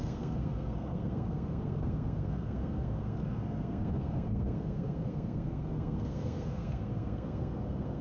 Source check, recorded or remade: remade